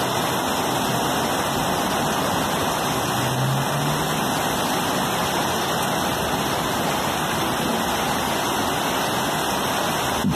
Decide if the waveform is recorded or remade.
recorded